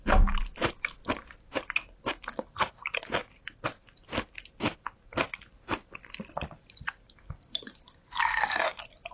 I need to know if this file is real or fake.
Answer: real